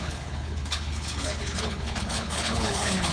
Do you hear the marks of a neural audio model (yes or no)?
yes